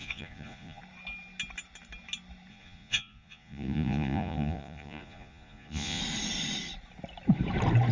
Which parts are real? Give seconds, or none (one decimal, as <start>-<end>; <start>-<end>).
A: 0.8-2.5; 6.0-7.9